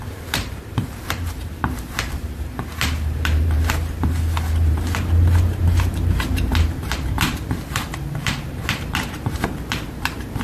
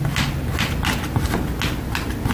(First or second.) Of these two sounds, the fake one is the first